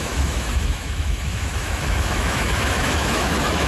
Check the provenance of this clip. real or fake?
fake